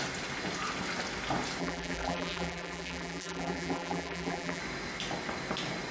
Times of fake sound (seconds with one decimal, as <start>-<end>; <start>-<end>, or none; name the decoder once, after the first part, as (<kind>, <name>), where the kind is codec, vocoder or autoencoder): 1.6-4.6 (vocoder, BigVGAN v2)